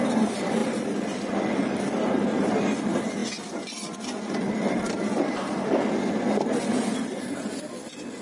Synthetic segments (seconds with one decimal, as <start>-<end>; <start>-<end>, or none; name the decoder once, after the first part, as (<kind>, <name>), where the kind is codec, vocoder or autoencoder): none